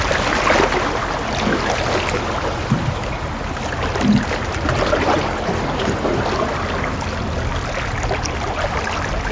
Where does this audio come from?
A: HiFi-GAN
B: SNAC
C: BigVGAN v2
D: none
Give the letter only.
D